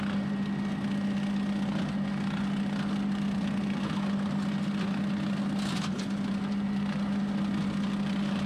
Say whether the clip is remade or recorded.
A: recorded